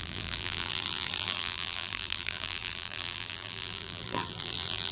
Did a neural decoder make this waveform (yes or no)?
yes